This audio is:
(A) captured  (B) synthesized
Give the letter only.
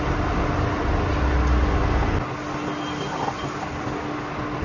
A